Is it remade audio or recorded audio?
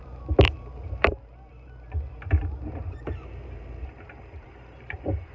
remade